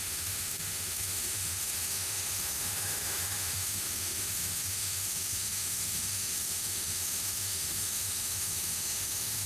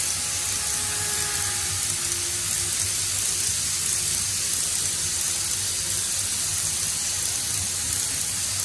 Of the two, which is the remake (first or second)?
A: first